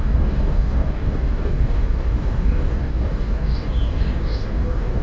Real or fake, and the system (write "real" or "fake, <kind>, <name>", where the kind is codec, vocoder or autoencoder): fake, codec, DAC